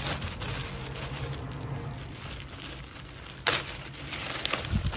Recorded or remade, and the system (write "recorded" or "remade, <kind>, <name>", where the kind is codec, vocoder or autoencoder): recorded